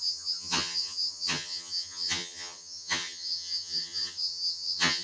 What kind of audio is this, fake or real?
fake